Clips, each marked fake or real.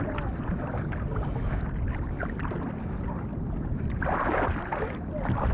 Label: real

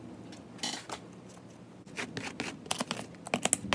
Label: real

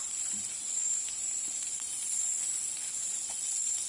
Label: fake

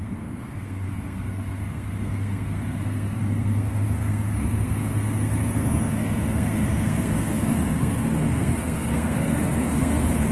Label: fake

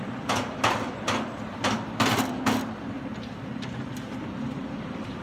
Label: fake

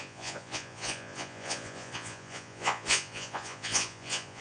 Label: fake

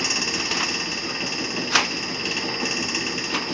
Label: real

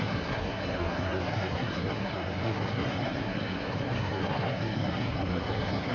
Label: fake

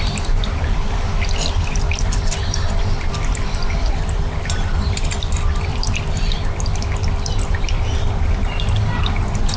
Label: real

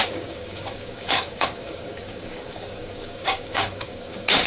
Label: fake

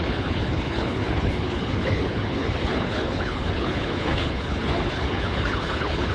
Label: fake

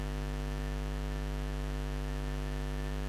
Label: real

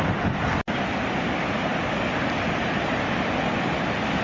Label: real